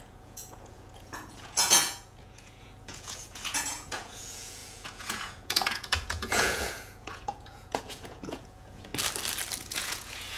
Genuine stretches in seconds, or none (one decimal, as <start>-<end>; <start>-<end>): 8.9-9.6